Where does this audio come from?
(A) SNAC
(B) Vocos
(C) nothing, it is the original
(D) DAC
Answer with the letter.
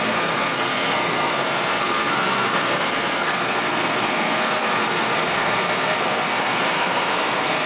A